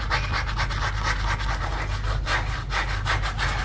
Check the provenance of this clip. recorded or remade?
recorded